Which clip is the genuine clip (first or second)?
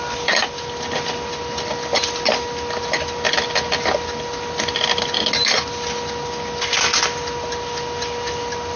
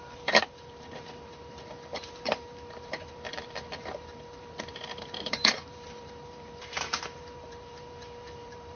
first